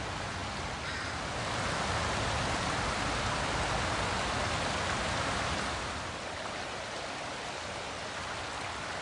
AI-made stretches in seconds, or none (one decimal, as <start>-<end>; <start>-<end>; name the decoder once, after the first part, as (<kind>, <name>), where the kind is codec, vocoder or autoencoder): none